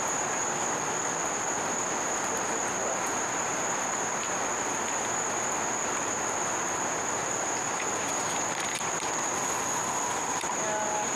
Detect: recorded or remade recorded